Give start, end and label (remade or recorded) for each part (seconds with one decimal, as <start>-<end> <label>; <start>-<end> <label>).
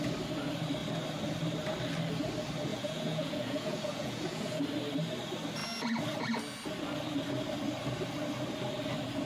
0.0-2.7 recorded; 2.7-4.6 remade; 4.6-9.3 recorded